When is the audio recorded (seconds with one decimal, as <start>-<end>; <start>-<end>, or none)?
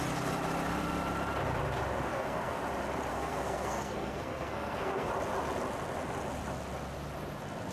0.0-2.1; 2.6-3.1; 5.1-7.7